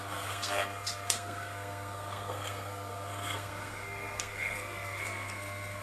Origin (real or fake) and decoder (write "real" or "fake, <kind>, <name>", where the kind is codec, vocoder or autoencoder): fake, codec, SNAC